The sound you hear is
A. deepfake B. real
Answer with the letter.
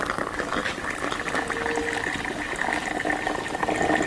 B